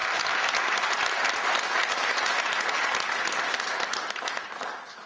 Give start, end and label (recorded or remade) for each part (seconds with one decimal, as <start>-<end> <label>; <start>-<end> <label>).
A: 0.0-5.1 recorded